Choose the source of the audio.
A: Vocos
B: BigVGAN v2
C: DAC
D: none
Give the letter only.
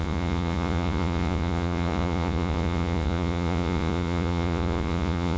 A